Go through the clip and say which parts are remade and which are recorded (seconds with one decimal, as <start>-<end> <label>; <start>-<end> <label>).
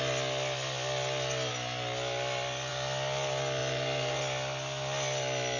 0.0-3.6 recorded; 3.6-4.2 remade; 4.2-5.6 recorded